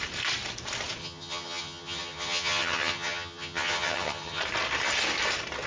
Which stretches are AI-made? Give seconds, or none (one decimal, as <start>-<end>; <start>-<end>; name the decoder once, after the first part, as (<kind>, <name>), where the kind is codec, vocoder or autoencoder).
1.0-4.4 (vocoder, HiFi-GAN)